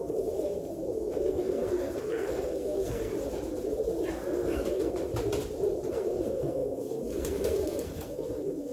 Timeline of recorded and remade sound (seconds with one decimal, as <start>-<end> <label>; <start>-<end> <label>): 0.0-3.1 remade; 3.1-4.1 recorded; 4.1-5.1 remade; 5.1-5.9 recorded; 5.9-8.7 remade